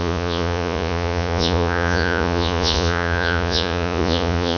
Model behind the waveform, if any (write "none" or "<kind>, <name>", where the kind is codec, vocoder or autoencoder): vocoder, Vocos